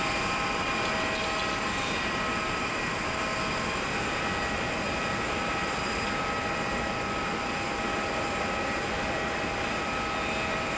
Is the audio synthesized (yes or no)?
no